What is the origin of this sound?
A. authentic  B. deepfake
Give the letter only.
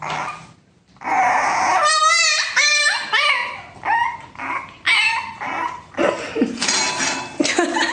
A